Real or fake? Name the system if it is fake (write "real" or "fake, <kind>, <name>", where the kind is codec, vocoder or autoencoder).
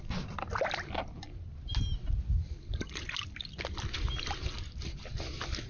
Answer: real